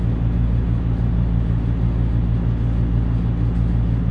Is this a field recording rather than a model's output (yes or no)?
yes